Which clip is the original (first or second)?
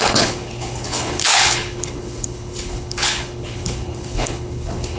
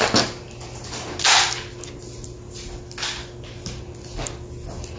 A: second